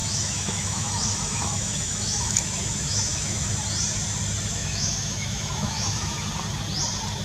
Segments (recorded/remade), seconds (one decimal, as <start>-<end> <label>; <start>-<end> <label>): 0.0-3.5 remade; 3.5-4.5 recorded; 4.5-6.2 remade; 6.2-7.2 recorded